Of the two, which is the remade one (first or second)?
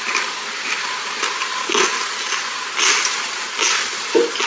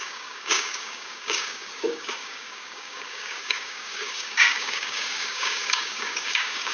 second